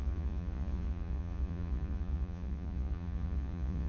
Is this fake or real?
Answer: fake